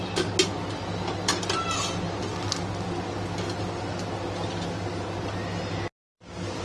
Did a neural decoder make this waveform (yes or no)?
no